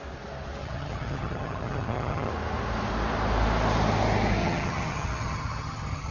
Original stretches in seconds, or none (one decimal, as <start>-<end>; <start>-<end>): 0.0-0.6; 2.3-4.4